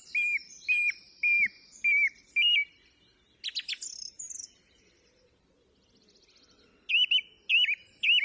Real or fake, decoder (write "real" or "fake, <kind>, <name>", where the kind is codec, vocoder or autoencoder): real